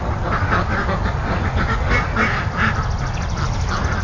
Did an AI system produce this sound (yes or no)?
no